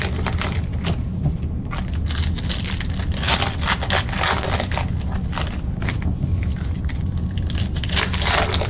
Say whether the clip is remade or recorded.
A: recorded